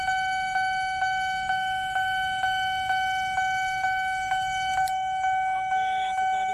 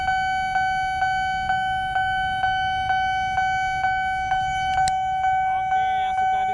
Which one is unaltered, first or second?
second